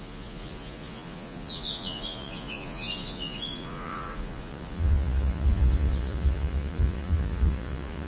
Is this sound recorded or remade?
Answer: remade